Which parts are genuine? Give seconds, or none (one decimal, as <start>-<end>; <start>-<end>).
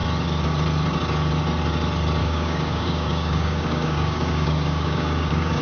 0.0-2.2